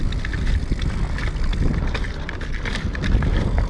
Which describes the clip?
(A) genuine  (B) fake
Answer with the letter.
A